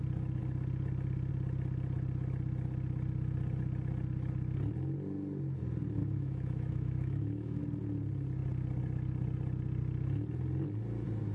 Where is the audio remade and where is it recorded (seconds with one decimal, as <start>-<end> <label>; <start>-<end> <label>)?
0.0-6.0 recorded; 6.0-7.6 remade; 7.6-11.3 recorded